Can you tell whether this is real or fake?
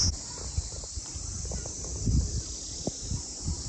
real